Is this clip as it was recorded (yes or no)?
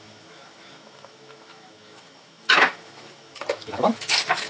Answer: no